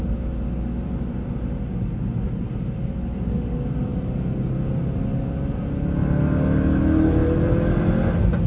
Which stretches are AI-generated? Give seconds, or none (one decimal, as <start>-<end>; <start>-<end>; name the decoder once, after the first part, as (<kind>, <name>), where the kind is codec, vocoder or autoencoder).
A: none